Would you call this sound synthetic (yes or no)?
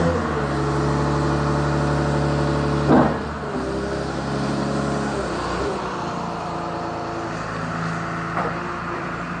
no